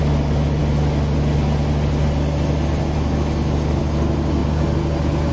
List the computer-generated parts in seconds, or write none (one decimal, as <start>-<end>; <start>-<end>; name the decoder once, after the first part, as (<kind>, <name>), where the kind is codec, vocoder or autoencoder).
none